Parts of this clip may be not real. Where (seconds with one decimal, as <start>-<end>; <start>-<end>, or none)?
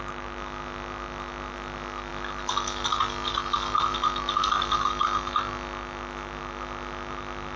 none